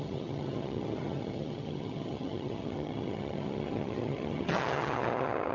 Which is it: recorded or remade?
remade